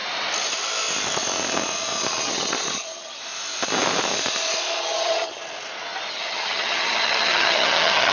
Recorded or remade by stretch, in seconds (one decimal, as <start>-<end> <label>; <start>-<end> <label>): 0.0-2.2 recorded; 2.2-3.2 remade; 3.2-4.8 recorded; 4.8-5.4 remade; 5.4-6.1 recorded; 6.1-8.1 remade